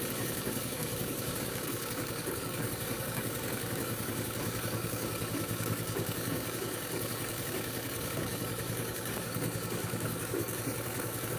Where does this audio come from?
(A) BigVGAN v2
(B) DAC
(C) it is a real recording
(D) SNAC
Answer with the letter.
B